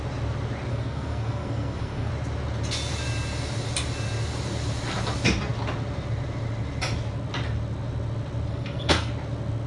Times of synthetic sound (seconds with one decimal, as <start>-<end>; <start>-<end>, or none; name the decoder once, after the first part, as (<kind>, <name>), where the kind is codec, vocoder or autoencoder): 0.7-2.1 (codec, SNAC); 8.5-9.1